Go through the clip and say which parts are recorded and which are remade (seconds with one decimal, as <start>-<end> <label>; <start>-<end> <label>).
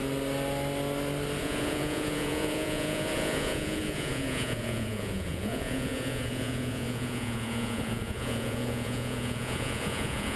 0.0-1.4 recorded; 1.4-10.4 remade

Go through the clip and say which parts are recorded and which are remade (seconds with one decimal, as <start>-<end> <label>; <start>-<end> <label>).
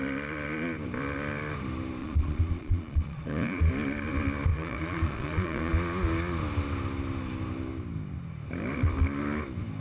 0.0-2.0 recorded; 2.0-3.7 remade; 3.7-4.5 recorded; 4.5-5.7 remade; 5.7-9.8 recorded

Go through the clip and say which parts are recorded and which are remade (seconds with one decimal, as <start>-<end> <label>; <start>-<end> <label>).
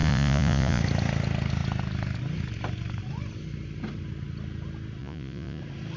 0.0-0.8 remade; 0.8-5.0 recorded; 5.0-5.6 remade; 5.6-6.0 recorded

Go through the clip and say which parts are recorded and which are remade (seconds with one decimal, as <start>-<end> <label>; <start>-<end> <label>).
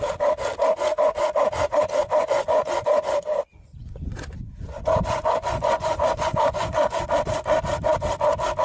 0.0-2.2 recorded; 2.2-7.0 remade; 7.0-8.6 recorded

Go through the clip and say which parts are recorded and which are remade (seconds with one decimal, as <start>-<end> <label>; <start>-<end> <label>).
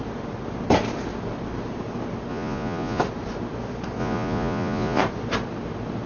0.0-2.3 recorded; 2.3-3.0 remade; 3.0-4.0 recorded; 4.0-5.0 remade; 5.0-6.1 recorded